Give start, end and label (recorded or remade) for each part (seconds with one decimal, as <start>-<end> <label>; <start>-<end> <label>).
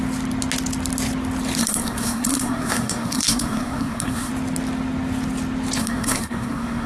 0.0-1.6 recorded; 1.6-4.3 remade; 4.3-5.8 recorded; 5.8-6.9 remade